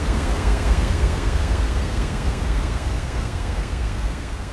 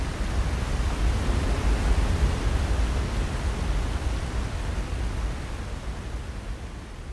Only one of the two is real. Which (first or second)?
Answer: second